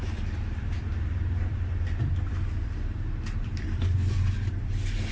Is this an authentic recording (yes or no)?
no